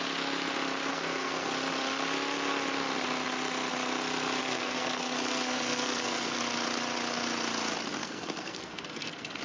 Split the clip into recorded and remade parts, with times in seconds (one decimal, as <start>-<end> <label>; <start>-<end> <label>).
0.0-0.9 recorded; 0.9-1.5 remade; 1.5-4.4 recorded; 4.4-6.4 remade; 6.4-8.0 recorded; 8.0-9.4 remade